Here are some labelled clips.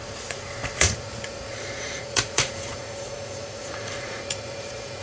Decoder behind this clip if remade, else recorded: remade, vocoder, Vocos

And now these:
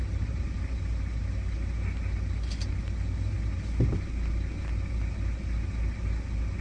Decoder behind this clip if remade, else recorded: recorded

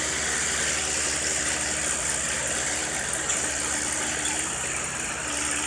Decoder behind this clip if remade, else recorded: recorded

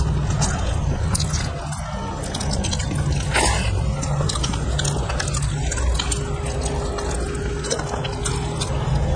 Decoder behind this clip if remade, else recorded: recorded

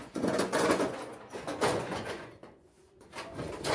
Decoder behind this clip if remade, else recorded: remade, vocoder, Vocos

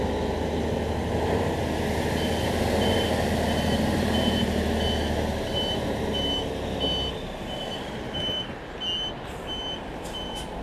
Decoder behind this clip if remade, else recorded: recorded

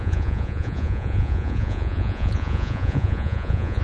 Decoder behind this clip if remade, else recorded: remade, vocoder, Vocos